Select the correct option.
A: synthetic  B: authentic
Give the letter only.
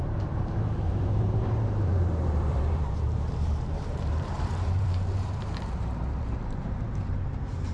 A